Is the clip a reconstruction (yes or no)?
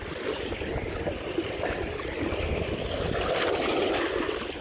no